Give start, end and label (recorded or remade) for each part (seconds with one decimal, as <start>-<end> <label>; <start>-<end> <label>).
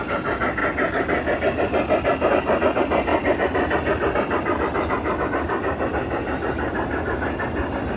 0.0-8.0 recorded